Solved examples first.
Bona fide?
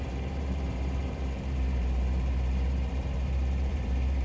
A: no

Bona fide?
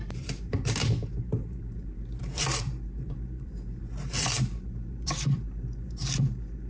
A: no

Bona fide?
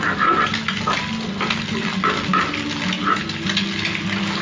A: yes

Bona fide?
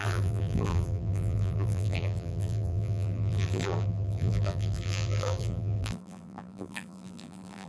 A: no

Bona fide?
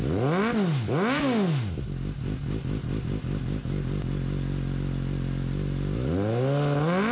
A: yes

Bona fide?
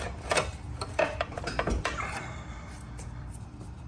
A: no